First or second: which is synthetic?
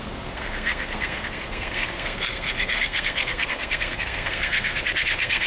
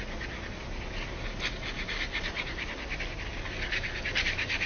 first